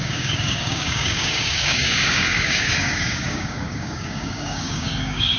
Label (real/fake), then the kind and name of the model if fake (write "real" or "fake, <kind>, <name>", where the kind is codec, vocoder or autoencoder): fake, codec, DAC